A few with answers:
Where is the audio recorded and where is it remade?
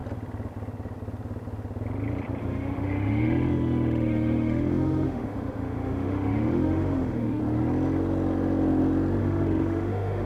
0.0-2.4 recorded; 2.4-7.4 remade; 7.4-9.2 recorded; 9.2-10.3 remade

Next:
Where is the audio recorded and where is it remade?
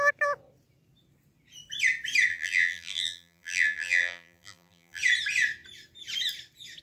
0.0-2.3 recorded; 2.3-5.0 remade; 5.0-6.8 recorded